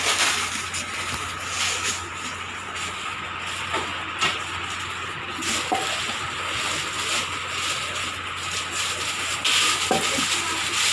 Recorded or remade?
recorded